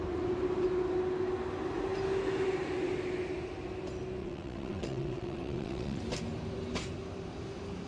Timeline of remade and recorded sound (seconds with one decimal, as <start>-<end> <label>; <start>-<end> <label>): 0.0-4.2 recorded; 4.2-6.0 remade; 6.0-7.9 recorded

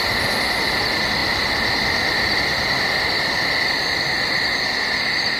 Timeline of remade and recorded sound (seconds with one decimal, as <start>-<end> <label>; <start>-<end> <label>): 0.0-5.4 recorded

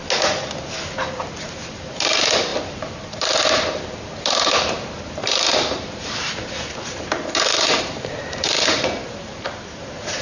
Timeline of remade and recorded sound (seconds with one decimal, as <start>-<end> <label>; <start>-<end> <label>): 0.0-1.4 recorded; 1.4-10.2 remade

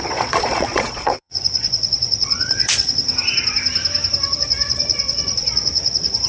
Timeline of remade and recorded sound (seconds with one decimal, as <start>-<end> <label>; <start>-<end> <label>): 0.0-3.0 remade; 3.0-4.4 recorded; 4.4-6.3 remade